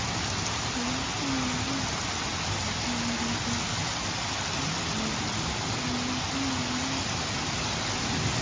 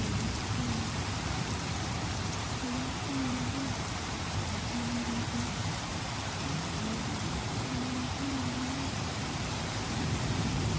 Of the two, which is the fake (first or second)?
second